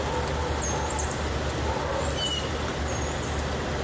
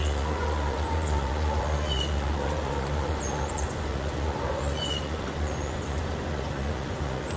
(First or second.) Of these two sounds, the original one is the first